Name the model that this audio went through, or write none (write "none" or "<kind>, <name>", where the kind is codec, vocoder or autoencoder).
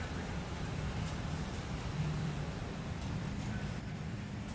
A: vocoder, BigVGAN v2